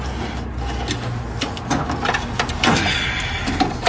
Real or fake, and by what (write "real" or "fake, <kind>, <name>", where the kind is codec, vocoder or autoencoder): real